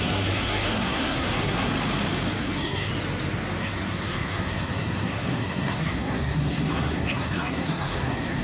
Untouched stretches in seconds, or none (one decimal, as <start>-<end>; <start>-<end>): 1.7-2.4; 2.9-3.6